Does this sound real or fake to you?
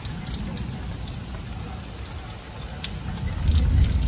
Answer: fake